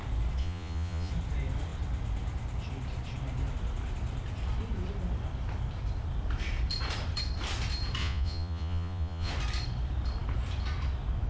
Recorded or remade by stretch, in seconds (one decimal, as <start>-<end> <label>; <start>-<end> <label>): 0.0-0.4 recorded; 0.4-1.1 remade; 1.1-8.0 recorded; 8.0-9.3 remade; 9.3-11.3 recorded